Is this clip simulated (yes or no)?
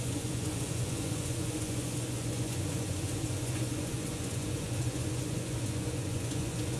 yes